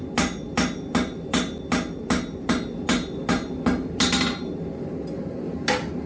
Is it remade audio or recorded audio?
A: recorded